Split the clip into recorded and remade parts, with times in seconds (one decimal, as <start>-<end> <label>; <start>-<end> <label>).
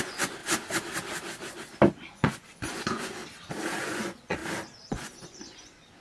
0.0-0.4 remade; 0.4-2.1 recorded; 2.1-3.2 remade; 3.2-3.8 recorded; 3.8-4.4 remade; 4.4-4.9 recorded; 4.9-6.0 remade